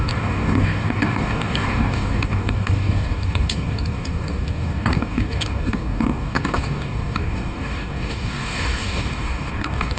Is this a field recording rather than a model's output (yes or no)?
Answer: no